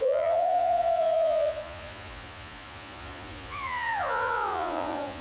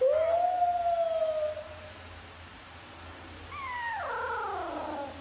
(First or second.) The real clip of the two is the second